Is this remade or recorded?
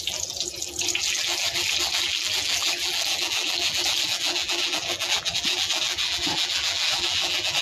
remade